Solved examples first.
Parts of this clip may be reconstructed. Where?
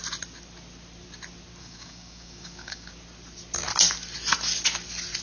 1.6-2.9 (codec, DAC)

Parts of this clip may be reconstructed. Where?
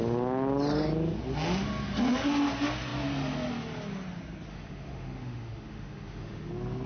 4.5-6.5 (autoencoder, DAC-VAE)